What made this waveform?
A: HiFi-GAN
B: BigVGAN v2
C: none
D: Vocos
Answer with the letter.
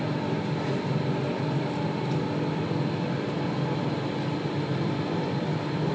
C